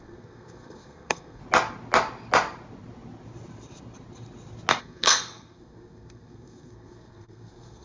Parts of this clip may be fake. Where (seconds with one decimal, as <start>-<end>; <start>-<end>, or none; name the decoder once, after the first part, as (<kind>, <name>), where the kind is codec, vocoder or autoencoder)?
0.0-1.4 (codec, SNAC); 4.8-7.8